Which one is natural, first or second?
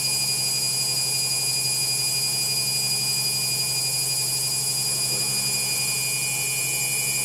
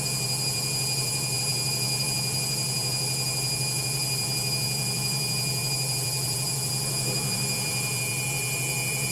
first